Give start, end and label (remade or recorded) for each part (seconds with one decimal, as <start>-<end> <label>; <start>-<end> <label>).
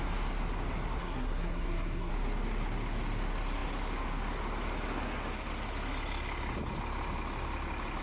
0.0-1.0 recorded; 1.0-2.1 remade; 2.1-8.0 recorded